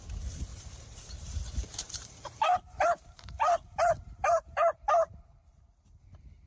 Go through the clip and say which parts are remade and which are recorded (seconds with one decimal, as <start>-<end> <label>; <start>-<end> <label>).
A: 0.0-0.5 recorded; 0.5-4.4 remade; 4.4-5.0 recorded; 5.0-6.0 remade; 6.0-6.5 recorded